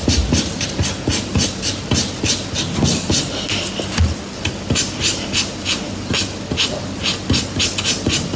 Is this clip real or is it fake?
real